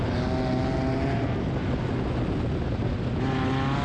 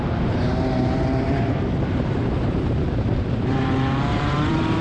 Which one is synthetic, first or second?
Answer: second